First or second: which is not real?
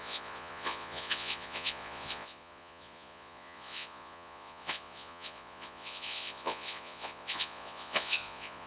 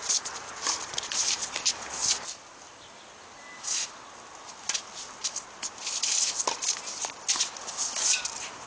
first